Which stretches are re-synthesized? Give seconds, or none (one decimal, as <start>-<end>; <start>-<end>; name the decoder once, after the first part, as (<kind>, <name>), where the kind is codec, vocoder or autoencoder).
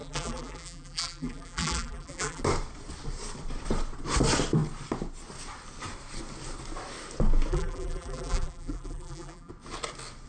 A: 0.0-2.4 (vocoder, BigVGAN v2); 7.5-9.5